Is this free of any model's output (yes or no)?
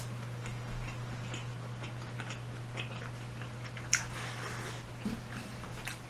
yes